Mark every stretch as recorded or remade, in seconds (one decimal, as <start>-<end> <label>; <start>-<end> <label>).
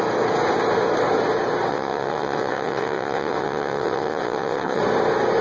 0.0-1.7 recorded; 1.7-4.8 remade; 4.8-5.4 recorded